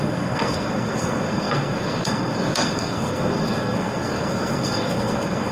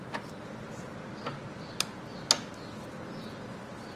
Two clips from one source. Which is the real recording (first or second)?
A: second